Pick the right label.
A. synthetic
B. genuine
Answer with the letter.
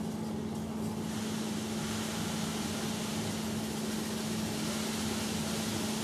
B